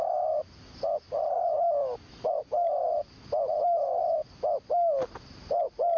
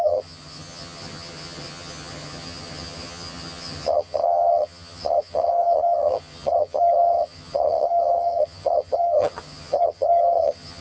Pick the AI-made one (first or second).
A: second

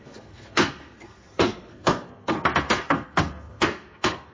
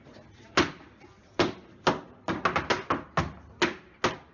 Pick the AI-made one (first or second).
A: first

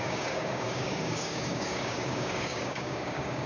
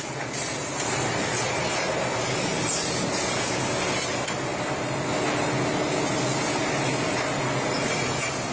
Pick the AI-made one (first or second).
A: first